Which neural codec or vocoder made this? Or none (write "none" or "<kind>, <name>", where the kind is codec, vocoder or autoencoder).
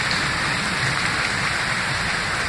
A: none